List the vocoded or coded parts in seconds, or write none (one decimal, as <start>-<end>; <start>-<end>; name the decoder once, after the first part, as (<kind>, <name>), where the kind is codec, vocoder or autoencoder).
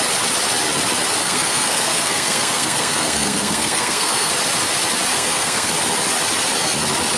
1.2-4.3 (codec, SNAC); 5.1-5.7